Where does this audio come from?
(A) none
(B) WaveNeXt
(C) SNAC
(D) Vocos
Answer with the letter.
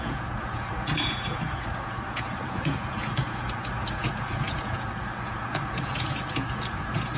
D